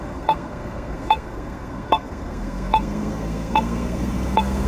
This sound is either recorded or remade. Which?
remade